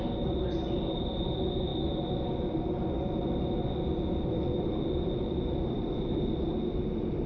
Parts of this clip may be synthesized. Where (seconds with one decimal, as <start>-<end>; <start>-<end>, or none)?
none